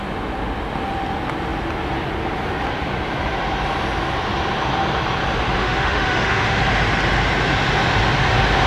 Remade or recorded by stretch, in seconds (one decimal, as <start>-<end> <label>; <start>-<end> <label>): 0.0-5.6 recorded; 5.6-6.6 remade; 6.6-8.7 recorded